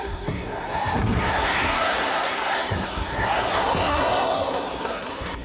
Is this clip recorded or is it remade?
remade